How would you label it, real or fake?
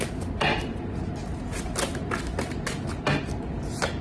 real